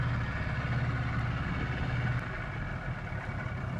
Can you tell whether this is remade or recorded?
recorded